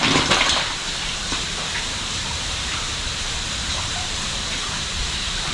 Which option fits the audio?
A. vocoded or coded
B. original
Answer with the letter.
A